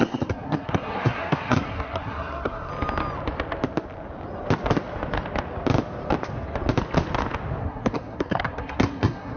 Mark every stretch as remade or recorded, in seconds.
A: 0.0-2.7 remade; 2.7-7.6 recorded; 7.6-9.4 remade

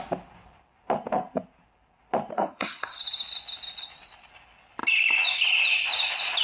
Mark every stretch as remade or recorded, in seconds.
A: 0.0-2.3 recorded; 2.3-3.0 remade; 3.0-6.4 recorded